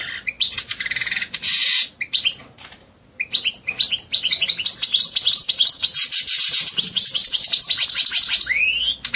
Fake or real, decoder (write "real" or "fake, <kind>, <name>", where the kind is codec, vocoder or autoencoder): real